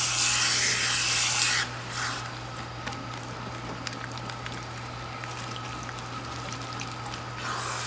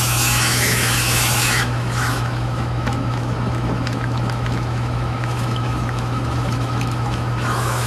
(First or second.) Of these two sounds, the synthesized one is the second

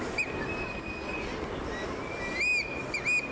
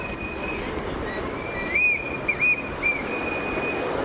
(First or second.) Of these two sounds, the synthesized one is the second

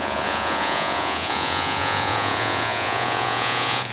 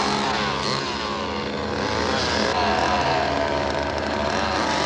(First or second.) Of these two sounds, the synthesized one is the first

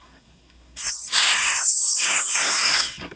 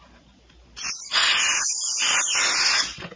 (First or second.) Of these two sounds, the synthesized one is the first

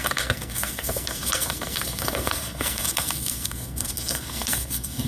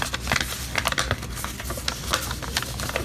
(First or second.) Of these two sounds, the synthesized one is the first